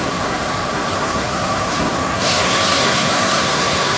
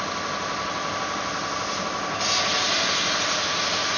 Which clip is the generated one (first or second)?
first